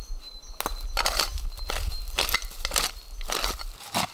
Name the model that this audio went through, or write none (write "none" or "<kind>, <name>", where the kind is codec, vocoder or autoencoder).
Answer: none